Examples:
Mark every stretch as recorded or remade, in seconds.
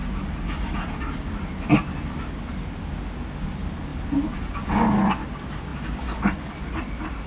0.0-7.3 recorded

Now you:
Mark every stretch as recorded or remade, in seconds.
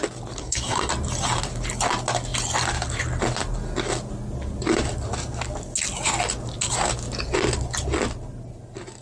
0.0-0.4 recorded; 0.4-0.9 remade; 0.9-9.0 recorded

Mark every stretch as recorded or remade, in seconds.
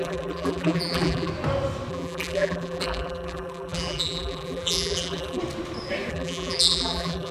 0.0-1.3 remade; 1.3-1.9 recorded; 1.9-5.4 remade; 5.4-6.1 recorded; 6.1-7.3 remade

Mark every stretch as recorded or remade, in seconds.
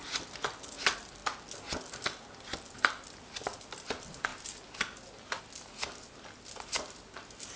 0.0-7.6 recorded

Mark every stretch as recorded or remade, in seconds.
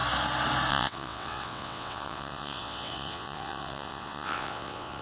0.0-0.7 recorded; 0.7-5.0 remade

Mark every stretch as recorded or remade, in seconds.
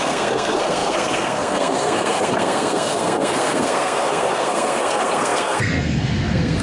0.0-6.6 remade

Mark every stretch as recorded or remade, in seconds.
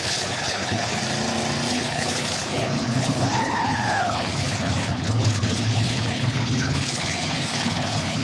0.0-1.0 remade; 1.0-1.7 recorded; 1.7-8.2 remade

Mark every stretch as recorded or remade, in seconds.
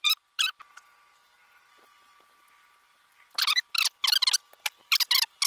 0.0-0.6 remade; 0.6-3.8 recorded; 3.8-5.5 remade